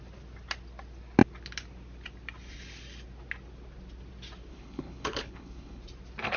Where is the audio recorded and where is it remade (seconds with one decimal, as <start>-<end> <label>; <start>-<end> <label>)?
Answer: 0.0-4.5 recorded; 4.5-5.8 remade; 5.8-6.4 recorded